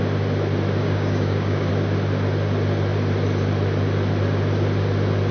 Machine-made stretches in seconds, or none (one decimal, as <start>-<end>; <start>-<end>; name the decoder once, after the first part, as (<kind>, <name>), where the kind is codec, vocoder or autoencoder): 0.8-1.7 (codec, DAC)